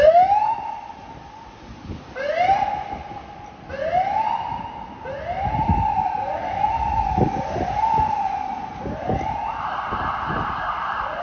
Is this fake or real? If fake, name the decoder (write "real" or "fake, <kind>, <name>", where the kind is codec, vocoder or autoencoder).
real